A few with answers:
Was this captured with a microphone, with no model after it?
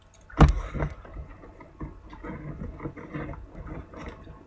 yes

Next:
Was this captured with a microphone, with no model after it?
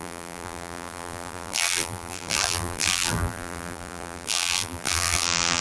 no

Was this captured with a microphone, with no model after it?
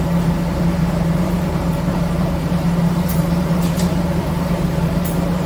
no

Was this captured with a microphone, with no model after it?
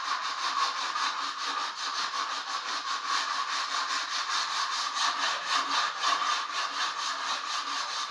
yes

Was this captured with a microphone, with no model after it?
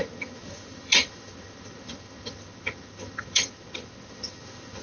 no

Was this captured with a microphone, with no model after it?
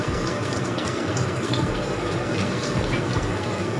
no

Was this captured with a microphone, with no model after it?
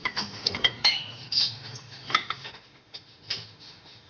no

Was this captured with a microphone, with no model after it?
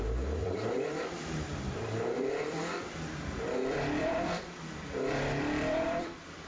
no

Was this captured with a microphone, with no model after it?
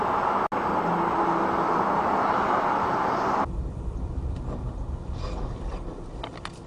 yes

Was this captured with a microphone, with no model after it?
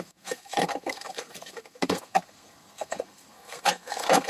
no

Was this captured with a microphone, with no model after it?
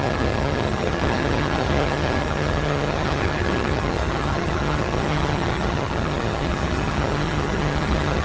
no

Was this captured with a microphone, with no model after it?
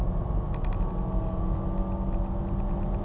yes